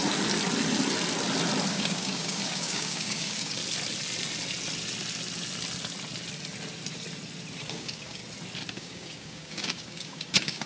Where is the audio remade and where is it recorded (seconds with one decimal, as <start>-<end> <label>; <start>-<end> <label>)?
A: 0.0-1.7 recorded; 1.7-3.6 remade; 3.6-7.7 recorded; 7.7-8.2 remade; 8.2-8.7 recorded; 8.7-10.7 remade